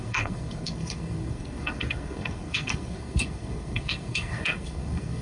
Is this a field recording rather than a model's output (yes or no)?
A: no